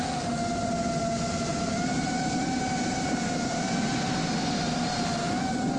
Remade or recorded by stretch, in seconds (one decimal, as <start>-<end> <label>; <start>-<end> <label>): 0.0-1.5 recorded; 1.5-5.0 remade; 5.0-5.8 recorded